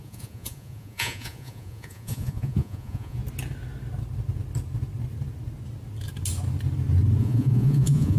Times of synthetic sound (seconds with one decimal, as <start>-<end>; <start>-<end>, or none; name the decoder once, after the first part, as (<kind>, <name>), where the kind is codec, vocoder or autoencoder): 0.0-3.2 (vocoder, Vocos); 7.2-8.2